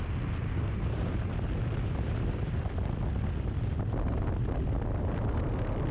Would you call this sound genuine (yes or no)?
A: yes